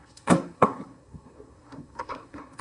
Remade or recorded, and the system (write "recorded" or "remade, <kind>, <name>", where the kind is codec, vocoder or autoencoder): remade, codec, SNAC